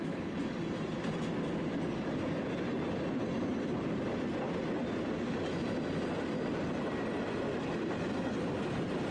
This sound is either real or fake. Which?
real